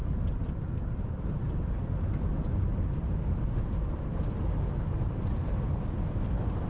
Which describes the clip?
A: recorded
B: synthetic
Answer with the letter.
A